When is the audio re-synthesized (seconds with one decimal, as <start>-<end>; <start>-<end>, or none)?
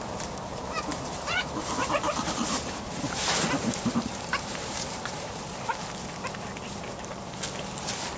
0.5-5.4